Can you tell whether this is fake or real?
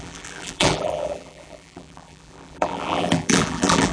fake